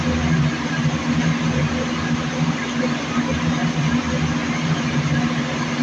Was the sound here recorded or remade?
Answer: recorded